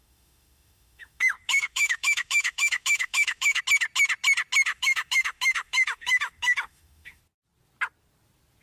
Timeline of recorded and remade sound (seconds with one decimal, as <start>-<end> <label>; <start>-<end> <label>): 0.0-3.6 remade; 3.6-4.7 recorded; 4.7-7.2 remade; 7.2-8.6 recorded